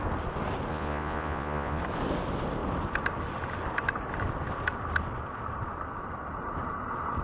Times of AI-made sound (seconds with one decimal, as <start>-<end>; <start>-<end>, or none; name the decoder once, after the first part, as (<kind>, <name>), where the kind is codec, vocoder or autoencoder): 0.7-1.8 (vocoder, Vocos)